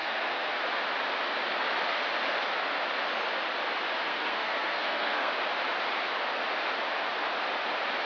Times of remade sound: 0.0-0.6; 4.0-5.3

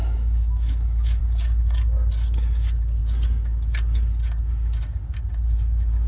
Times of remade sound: 0.0-1.2

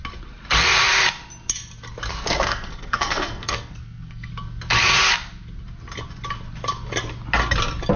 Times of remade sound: 2.1-4.3

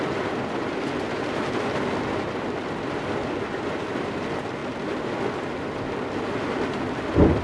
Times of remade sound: none

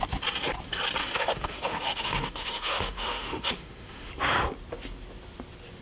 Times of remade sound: 1.0-4.1